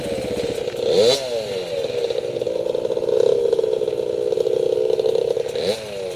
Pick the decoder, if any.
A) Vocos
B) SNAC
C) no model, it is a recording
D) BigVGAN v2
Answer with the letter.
C